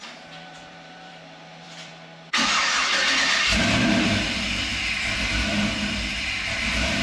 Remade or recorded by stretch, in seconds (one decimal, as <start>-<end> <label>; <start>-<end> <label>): 0.0-1.9 remade; 1.9-6.1 recorded; 6.1-7.0 remade